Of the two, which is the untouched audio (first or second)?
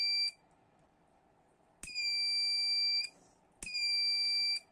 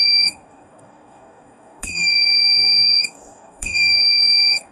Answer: first